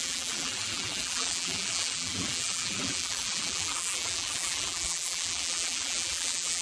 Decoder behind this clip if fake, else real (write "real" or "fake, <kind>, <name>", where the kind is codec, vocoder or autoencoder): fake, vocoder, BigVGAN v2